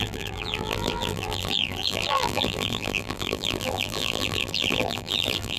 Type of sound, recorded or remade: remade